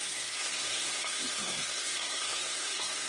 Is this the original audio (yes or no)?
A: no